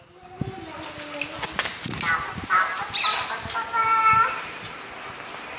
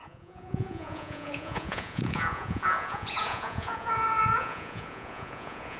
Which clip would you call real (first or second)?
first